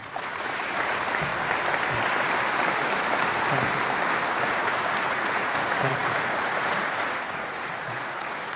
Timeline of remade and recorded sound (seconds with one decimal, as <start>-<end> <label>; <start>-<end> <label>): 0.0-1.3 remade; 1.3-4.4 recorded; 4.4-8.6 remade